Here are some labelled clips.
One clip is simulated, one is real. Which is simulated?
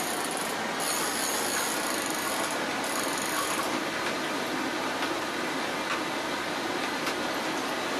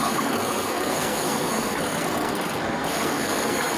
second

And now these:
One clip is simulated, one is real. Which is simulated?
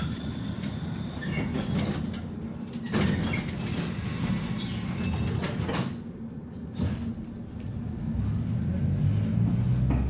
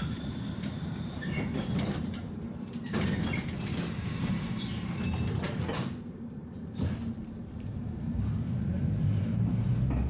second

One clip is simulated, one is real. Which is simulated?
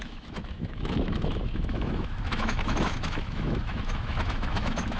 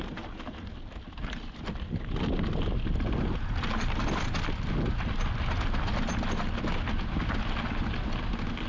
first